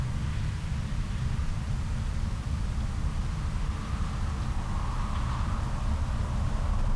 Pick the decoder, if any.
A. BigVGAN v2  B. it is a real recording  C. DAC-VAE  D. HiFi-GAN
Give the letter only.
B